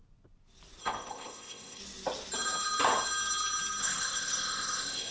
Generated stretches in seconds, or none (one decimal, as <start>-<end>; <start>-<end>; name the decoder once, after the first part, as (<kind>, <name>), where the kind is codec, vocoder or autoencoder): 0.8-1.8 (codec, ZipCodec); 3.8-5.1